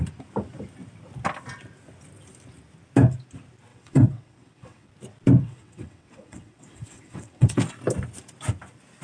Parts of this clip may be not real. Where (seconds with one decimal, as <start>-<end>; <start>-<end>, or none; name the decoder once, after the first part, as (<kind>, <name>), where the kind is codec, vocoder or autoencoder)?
3.7-4.9 (vocoder, WaveNeXt); 5.4-7.6